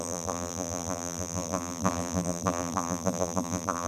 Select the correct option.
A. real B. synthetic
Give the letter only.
B